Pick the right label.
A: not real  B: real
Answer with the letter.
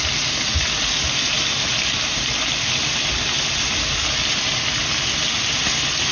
B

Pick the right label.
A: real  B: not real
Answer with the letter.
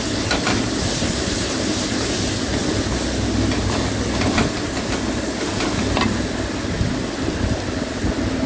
A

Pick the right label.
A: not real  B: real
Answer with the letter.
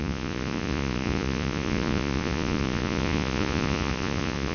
A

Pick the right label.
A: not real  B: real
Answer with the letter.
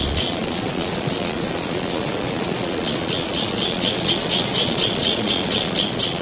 A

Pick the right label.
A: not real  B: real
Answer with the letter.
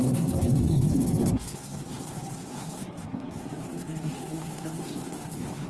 A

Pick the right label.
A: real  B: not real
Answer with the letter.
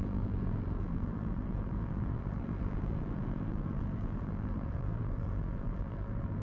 B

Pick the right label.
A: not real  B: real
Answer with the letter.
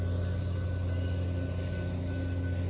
B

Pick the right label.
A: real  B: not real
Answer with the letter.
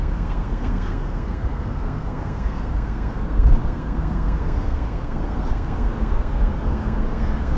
B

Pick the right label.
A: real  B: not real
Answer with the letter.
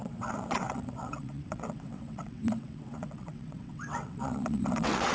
B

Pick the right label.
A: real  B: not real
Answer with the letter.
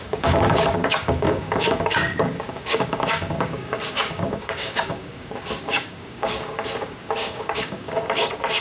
B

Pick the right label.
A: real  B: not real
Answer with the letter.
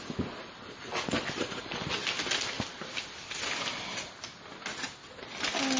A